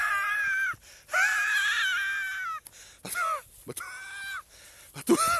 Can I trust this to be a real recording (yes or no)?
yes